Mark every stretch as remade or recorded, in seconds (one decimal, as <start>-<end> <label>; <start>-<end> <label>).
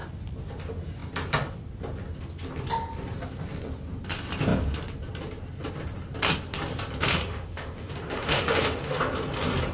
0.0-7.1 recorded; 7.1-9.0 remade; 9.0-9.7 recorded